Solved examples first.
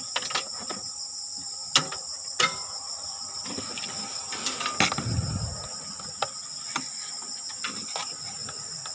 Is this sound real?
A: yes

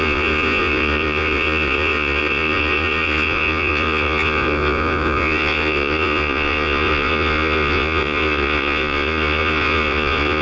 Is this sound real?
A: no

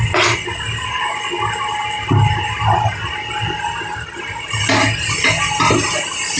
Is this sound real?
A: yes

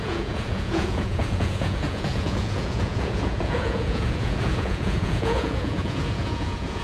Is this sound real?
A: no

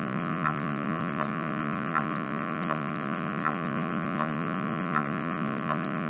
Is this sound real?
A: no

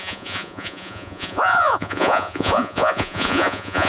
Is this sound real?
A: no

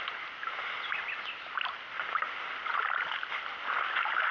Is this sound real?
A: yes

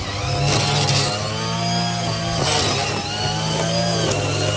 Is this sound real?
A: yes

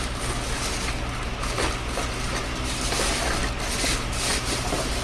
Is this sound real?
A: yes